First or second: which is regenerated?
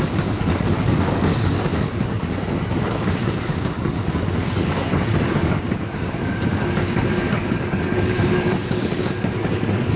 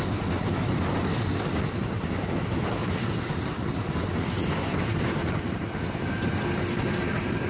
first